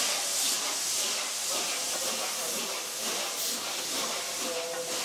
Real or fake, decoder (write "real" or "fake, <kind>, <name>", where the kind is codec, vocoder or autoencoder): real